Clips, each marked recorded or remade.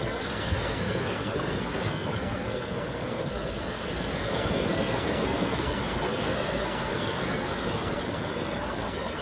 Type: remade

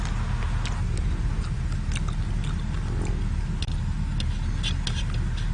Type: recorded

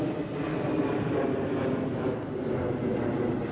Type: recorded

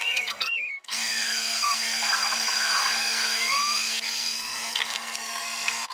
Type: remade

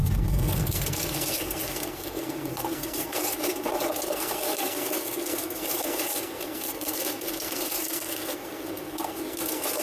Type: remade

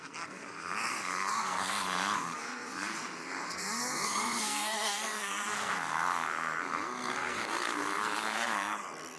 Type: remade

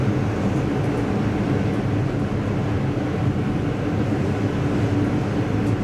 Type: recorded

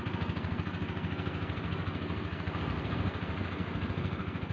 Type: remade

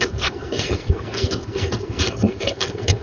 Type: remade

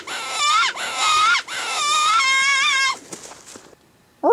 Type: recorded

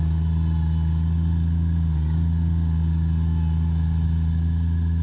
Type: recorded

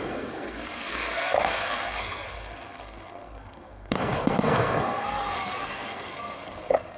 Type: remade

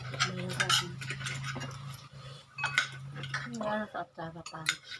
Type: recorded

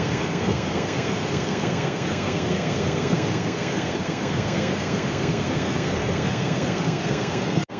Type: remade